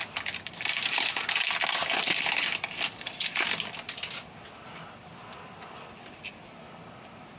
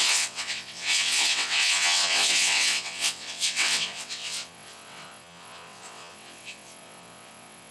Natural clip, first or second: first